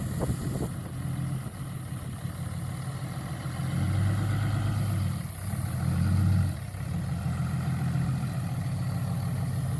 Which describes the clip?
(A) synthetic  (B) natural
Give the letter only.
B